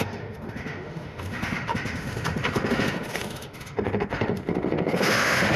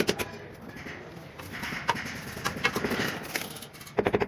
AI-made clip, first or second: first